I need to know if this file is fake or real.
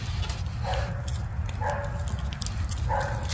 real